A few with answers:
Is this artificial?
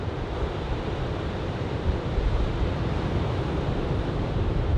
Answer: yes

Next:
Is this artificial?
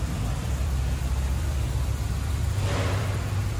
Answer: yes